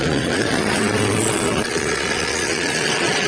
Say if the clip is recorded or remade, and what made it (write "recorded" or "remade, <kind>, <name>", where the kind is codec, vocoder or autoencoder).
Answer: remade, vocoder, Vocos